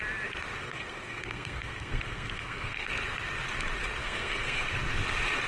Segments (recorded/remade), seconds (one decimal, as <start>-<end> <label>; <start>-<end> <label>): 0.0-0.6 recorded; 0.6-2.9 remade; 2.9-4.0 recorded; 4.0-4.6 remade; 4.6-5.5 recorded